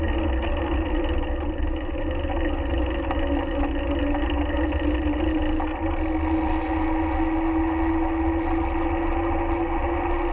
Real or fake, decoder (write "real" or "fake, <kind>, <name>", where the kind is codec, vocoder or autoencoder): real